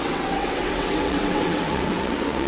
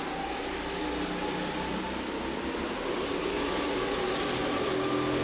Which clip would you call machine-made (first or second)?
first